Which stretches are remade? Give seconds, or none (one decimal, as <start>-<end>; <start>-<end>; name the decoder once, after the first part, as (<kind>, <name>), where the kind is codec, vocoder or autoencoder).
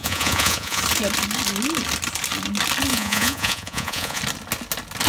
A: 0.0-0.8 (vocoder, Vocos); 2.9-4.2